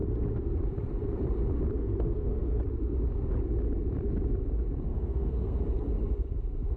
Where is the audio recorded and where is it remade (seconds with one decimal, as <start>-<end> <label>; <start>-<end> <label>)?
0.0-1.8 recorded; 1.8-2.6 remade; 2.6-4.9 recorded; 4.9-5.6 remade; 5.6-6.8 recorded